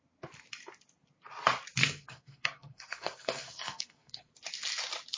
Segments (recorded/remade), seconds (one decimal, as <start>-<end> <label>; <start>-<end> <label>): 0.0-1.8 recorded; 1.8-4.3 remade; 4.3-5.2 recorded